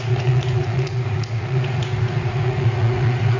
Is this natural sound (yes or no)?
no